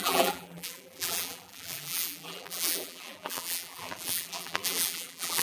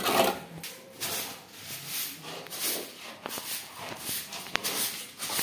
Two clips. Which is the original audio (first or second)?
second